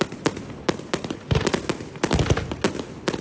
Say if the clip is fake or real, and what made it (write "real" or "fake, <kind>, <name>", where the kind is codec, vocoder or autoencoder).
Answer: real